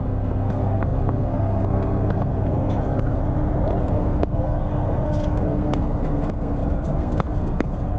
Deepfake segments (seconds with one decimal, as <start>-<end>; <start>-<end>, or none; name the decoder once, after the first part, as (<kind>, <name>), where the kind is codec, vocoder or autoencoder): 0.0-3.2 (codec, SNAC); 3.8-8.0